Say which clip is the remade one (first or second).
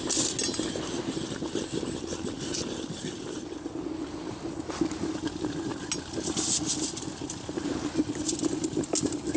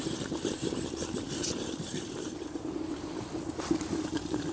second